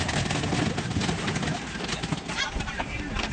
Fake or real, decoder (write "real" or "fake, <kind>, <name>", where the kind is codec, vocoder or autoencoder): real